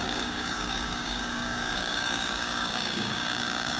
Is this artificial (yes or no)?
yes